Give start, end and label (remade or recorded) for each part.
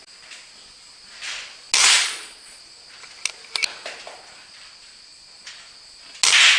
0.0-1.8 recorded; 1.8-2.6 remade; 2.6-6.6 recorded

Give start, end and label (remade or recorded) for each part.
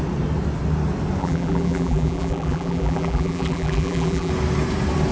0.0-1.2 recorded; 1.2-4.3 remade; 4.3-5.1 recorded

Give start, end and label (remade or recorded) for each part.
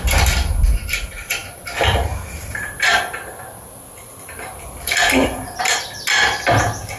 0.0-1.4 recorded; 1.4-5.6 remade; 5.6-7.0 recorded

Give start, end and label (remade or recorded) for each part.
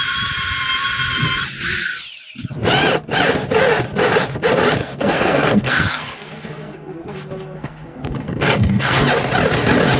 0.0-4.8 recorded; 4.8-9.0 remade; 9.0-10.0 recorded